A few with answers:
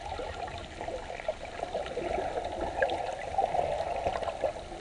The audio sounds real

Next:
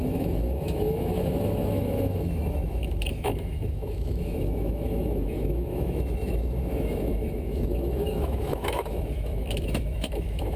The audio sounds fake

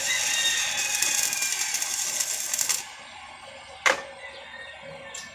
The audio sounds real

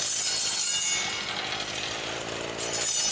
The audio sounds real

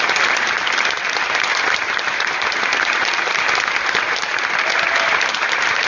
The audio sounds real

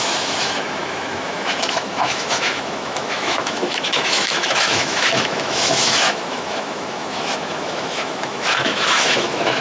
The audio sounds fake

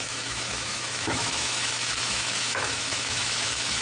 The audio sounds fake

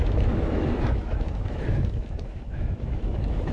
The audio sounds fake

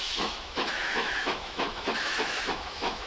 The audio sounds fake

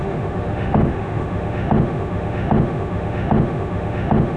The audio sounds fake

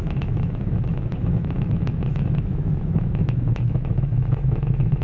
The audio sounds fake